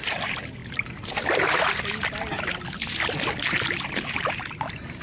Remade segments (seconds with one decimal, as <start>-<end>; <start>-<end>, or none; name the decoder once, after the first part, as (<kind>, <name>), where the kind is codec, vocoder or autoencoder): none